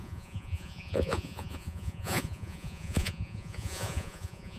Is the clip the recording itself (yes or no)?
no